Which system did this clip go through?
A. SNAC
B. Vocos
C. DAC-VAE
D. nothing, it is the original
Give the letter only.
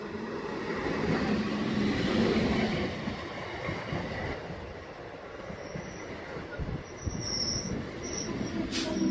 D